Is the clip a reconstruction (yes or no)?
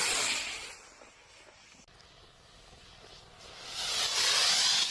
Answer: no